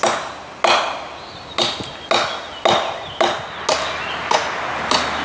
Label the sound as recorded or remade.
recorded